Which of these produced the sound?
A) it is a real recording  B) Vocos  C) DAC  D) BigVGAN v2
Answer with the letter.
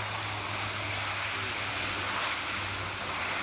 A